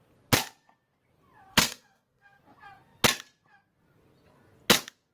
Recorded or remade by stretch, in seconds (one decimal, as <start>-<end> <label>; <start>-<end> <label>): 0.0-1.5 recorded; 1.5-2.4 remade; 2.4-5.1 recorded